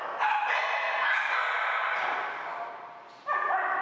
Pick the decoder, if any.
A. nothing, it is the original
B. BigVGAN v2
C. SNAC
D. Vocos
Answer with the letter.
A